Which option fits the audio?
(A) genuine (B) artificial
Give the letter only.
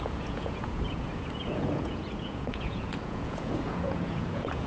B